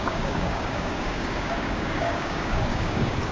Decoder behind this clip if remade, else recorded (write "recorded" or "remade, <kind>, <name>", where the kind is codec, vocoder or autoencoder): remade, codec, DAC